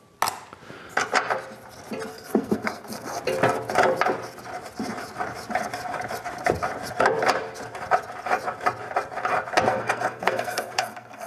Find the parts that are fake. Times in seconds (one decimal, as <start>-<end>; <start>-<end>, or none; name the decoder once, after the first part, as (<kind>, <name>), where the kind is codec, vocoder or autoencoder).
2.1-3.2 (codec, SNAC); 9.7-11.3